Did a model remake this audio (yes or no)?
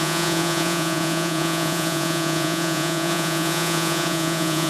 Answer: yes